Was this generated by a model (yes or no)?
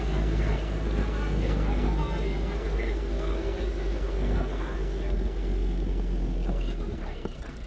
yes